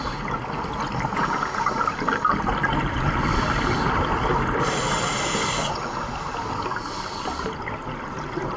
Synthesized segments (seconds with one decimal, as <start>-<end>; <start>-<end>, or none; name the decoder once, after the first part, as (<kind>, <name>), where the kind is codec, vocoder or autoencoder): 1.1-1.7 (vocoder, Vocos)